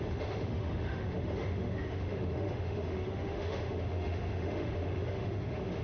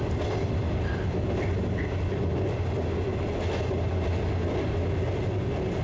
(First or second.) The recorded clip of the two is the second